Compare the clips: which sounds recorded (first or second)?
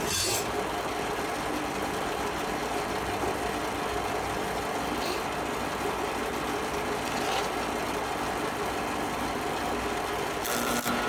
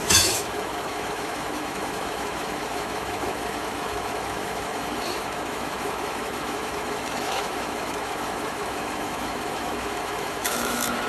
first